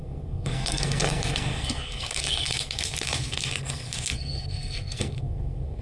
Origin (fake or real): fake